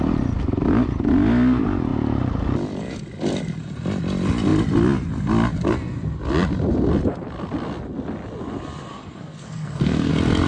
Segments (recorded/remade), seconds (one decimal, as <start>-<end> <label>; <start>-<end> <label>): 0.0-8.9 recorded; 8.9-10.1 remade; 10.1-10.5 recorded